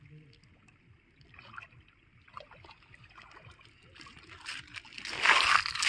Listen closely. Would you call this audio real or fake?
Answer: real